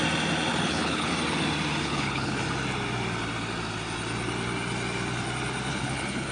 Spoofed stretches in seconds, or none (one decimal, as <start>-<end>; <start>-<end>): 0.5-1.1; 1.8-2.4; 5.7-6.3